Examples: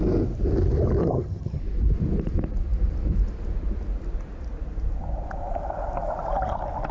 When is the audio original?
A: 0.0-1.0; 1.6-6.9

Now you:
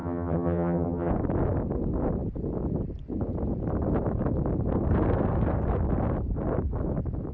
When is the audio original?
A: 1.1-7.3

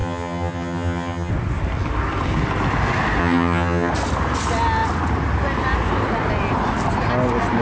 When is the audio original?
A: 1.3-3.2; 3.9-7.6